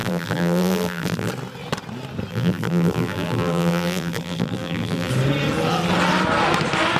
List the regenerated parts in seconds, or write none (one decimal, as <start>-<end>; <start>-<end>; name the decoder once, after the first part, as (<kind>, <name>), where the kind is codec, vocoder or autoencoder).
0.0-1.3 (vocoder, BigVGAN v2); 2.3-5.1

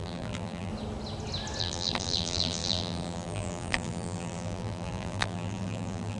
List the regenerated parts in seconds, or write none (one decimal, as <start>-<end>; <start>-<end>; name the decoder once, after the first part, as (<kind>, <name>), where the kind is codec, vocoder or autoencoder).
0.0-0.7 (vocoder, BigVGAN v2); 1.6-6.2